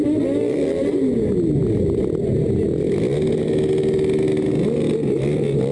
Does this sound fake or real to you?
real